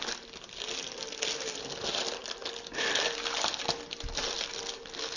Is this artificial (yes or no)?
no